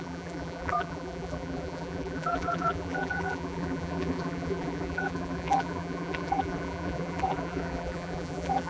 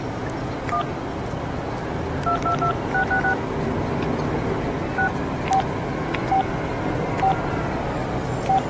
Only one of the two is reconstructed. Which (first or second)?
first